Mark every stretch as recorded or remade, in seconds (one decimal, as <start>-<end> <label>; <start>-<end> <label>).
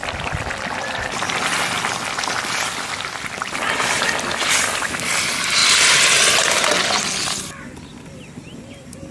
0.0-9.1 recorded